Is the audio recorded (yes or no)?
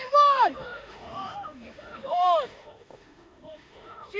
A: no